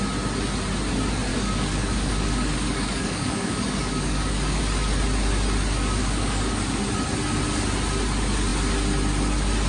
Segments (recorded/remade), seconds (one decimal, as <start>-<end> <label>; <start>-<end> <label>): 0.0-1.3 recorded; 1.3-4.6 remade; 4.6-6.0 recorded; 6.0-6.8 remade; 6.8-9.7 recorded